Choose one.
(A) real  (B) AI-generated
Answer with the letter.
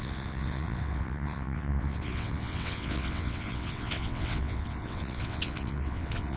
B